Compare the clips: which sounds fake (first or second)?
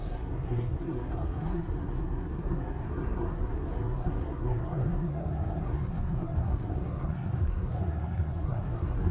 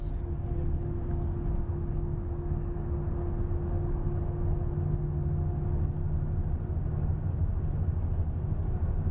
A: first